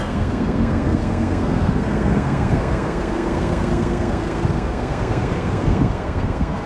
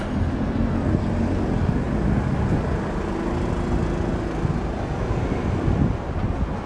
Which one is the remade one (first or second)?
first